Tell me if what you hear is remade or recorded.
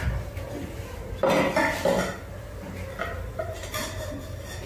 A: recorded